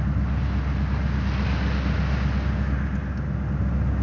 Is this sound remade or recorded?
recorded